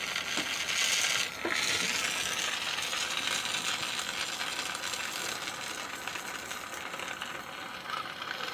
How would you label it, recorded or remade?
recorded